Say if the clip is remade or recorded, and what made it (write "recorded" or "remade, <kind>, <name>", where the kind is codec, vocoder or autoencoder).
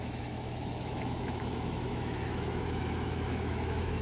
remade, autoencoder, DAC-VAE